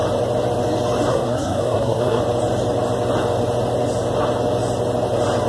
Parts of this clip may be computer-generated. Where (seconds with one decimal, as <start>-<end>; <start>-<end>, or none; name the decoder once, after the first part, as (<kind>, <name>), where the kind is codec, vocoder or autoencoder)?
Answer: 1.1-2.2 (codec, SNAC)